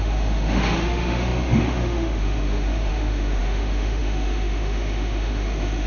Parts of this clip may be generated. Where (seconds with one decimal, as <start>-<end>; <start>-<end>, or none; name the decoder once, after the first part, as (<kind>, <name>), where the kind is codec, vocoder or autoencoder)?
0.0-5.9 (autoencoder, DAC-VAE)